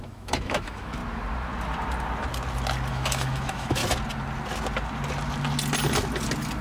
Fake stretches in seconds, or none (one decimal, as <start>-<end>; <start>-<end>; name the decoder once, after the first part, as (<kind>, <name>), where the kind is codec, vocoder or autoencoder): 0.0-1.0 (autoencoder, DAC-VAE); 2.9-3.8